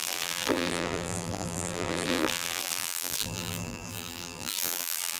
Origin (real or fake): fake